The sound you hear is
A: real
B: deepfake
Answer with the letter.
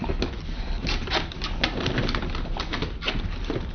A